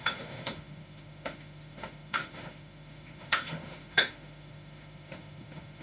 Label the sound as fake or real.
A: fake